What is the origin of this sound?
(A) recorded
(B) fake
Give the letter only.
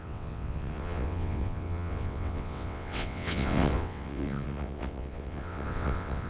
B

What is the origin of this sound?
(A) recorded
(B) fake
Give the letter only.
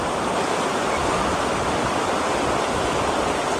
A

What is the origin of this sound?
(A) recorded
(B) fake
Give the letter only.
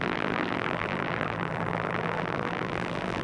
B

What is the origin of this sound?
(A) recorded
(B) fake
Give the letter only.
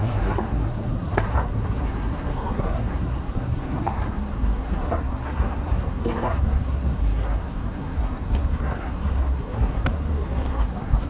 B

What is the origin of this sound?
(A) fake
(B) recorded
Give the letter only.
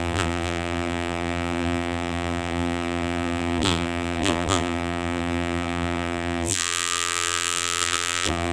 A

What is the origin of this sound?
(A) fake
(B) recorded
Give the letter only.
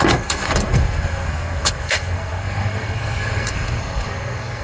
A